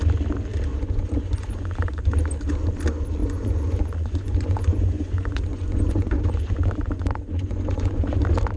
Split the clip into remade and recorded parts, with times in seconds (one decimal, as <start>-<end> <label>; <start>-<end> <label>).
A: 0.0-0.7 recorded; 0.7-2.0 remade; 2.0-3.2 recorded; 3.2-8.2 remade; 8.2-8.6 recorded